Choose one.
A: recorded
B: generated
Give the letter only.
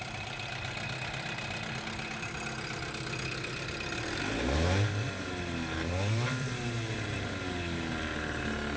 A